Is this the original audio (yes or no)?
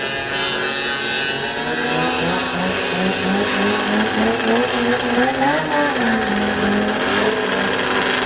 yes